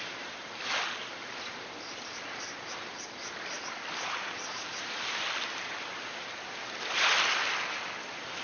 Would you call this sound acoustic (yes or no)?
yes